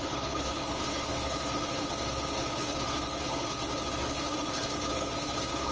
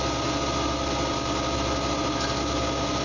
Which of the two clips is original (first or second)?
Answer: second